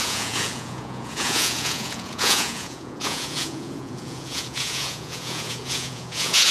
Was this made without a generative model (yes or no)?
no